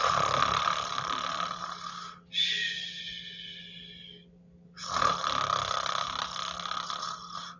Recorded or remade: recorded